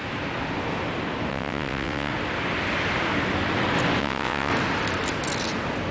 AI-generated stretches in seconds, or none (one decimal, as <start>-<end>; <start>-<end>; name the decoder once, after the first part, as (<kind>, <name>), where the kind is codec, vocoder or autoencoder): 1.3-2.1 (vocoder, WaveNeXt); 4.0-4.5